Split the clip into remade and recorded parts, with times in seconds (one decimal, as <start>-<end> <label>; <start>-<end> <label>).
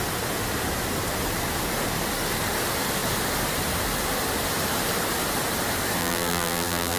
0.0-6.0 recorded; 6.0-7.0 remade